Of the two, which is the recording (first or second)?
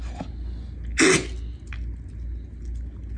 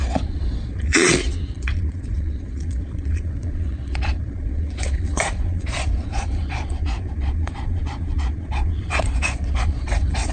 first